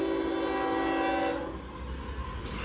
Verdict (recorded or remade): recorded